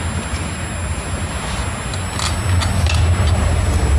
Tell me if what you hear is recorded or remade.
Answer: recorded